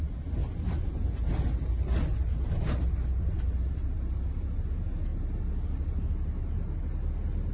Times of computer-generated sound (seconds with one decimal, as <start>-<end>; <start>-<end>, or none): none